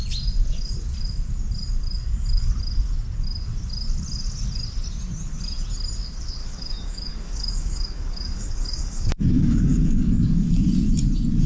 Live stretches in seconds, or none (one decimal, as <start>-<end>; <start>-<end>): 0.0-6.4; 10.5-11.5